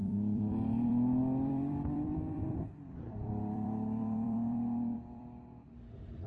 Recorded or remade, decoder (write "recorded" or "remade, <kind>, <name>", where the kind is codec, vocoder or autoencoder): remade, vocoder, BigVGAN v2